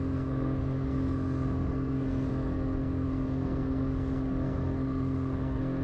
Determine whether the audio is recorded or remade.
remade